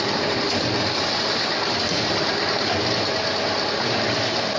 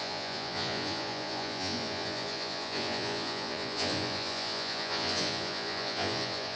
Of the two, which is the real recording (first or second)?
first